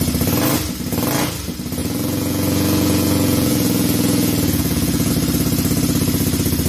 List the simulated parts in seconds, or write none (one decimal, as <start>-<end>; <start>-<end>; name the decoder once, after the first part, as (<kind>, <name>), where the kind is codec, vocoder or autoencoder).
1.8-5.1 (vocoder, Vocos)